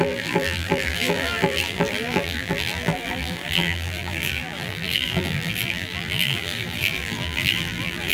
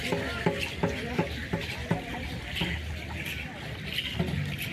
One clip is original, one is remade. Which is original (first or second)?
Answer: second